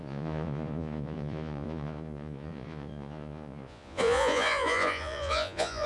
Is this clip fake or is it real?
fake